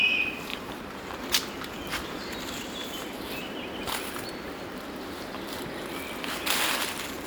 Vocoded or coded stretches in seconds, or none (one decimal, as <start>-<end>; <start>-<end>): 0.5-4.5